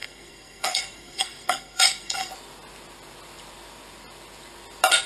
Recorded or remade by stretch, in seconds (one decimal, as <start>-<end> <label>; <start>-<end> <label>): 0.0-2.3 remade; 2.3-5.1 recorded